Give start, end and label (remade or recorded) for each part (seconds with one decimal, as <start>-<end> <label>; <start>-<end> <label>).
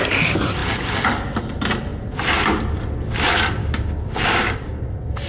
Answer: 0.0-3.6 recorded; 3.6-4.8 remade; 4.8-5.3 recorded